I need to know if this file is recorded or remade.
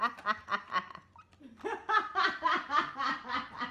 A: remade